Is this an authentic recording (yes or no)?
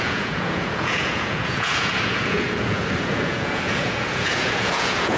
no